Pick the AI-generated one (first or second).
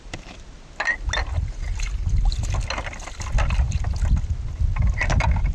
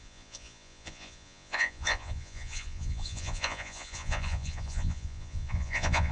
second